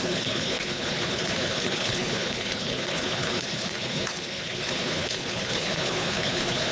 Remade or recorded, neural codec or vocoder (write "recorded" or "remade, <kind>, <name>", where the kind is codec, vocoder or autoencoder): remade, codec, HILCodec